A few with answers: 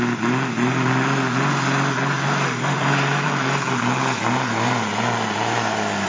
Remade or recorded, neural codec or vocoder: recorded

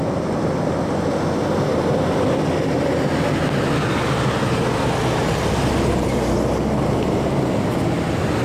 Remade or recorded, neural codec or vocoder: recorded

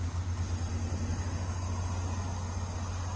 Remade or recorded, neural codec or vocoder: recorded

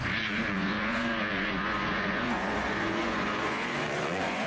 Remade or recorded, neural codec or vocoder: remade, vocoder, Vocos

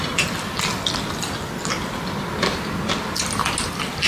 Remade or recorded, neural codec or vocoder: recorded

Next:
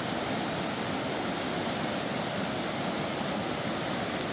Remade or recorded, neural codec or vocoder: recorded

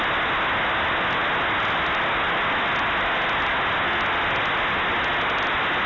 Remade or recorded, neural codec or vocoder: recorded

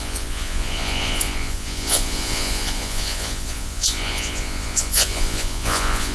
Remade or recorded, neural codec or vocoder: remade, vocoder, Vocos